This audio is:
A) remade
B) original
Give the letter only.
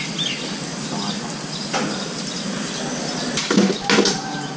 B